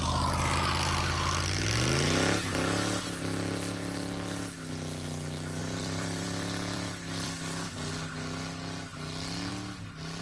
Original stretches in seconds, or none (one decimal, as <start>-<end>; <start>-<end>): 0.0-5.6; 7.7-10.2